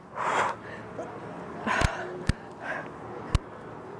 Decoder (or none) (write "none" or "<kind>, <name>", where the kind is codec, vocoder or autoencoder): none